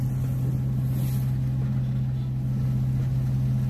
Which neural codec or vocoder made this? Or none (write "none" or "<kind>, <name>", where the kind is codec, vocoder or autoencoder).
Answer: none